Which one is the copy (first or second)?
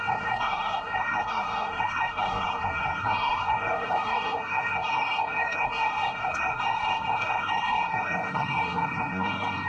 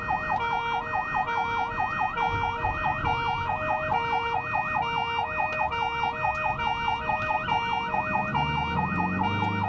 first